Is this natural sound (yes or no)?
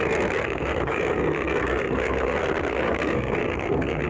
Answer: no